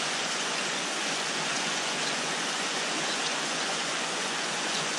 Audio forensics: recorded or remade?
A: remade